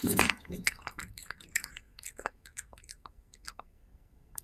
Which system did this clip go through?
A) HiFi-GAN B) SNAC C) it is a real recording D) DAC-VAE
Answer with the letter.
B